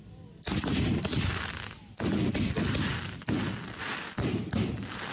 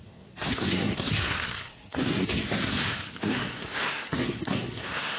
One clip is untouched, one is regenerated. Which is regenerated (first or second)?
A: second